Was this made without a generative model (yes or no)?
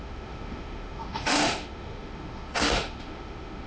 no